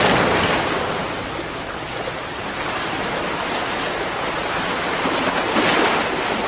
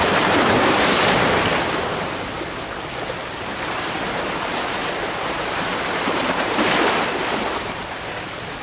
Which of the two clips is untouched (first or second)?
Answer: first